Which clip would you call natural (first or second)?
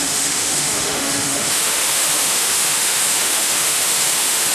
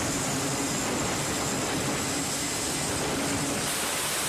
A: second